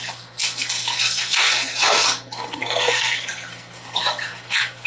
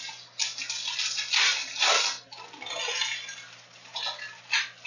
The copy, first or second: first